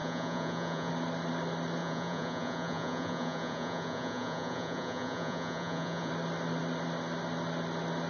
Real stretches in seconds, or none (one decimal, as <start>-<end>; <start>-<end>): 0.9-1.8; 6.1-8.1